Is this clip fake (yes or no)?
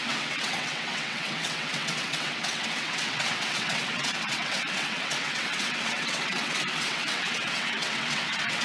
yes